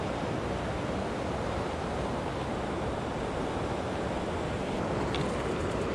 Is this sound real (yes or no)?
yes